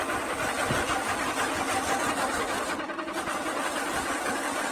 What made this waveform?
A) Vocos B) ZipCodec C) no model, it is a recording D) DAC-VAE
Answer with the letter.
C